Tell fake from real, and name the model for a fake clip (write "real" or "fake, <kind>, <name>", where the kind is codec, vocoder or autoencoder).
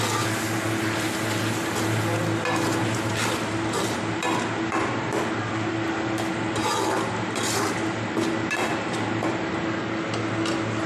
real